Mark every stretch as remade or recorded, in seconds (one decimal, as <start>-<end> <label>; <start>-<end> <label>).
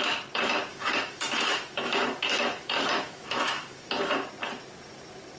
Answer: 0.0-0.7 recorded; 0.7-3.9 remade; 3.9-5.4 recorded